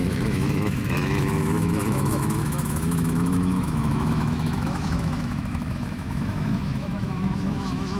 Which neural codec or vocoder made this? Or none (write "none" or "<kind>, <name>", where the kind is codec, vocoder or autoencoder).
autoencoder, DAC-VAE